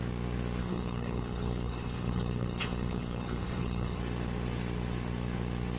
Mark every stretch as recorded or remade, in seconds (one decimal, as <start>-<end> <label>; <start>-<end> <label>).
0.0-0.6 recorded; 0.6-4.0 remade; 4.0-5.8 recorded